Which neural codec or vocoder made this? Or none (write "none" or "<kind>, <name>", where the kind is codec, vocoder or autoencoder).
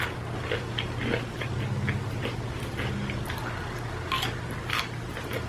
none